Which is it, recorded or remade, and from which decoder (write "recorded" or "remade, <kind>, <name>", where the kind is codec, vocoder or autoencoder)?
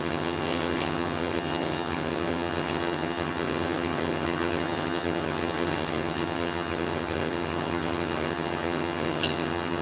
remade, vocoder, HiFi-GAN